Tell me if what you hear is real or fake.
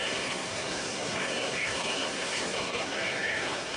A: fake